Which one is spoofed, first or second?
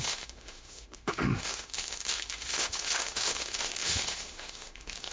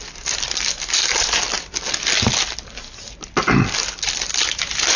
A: first